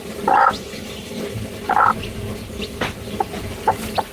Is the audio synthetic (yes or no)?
yes